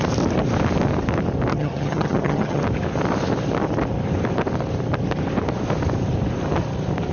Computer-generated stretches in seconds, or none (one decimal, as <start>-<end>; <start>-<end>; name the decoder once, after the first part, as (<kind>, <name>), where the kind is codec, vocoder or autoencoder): 1.5-2.6 (vocoder, HiFi-GAN)